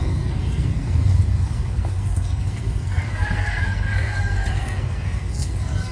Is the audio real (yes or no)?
no